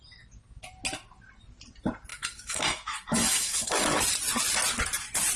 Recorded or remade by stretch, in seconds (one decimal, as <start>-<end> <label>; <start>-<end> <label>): 0.0-2.1 recorded; 2.1-4.0 remade; 4.0-5.4 recorded